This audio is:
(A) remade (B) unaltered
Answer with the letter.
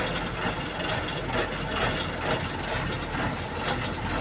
B